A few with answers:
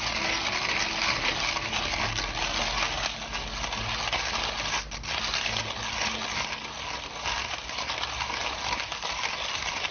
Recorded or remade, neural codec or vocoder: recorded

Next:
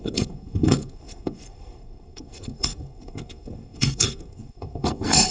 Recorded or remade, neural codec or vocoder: remade, codec, SNAC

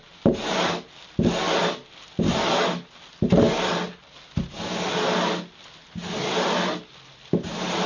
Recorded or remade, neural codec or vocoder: recorded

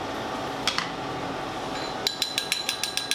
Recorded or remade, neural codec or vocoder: recorded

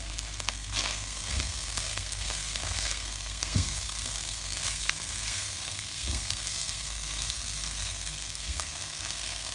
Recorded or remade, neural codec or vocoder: remade, codec, SNAC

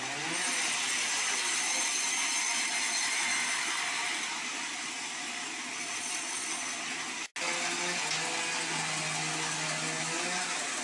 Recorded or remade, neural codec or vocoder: recorded